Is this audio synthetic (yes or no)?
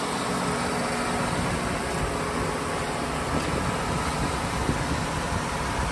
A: no